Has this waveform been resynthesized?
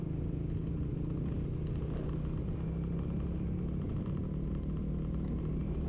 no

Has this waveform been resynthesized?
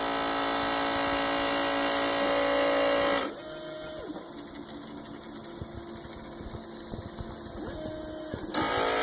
no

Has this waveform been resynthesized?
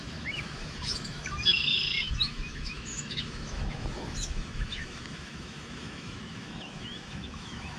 yes